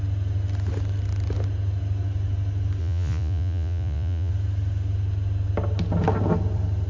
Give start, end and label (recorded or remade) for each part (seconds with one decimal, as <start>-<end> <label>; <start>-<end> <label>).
0.0-2.8 recorded; 2.8-4.3 remade; 4.3-6.9 recorded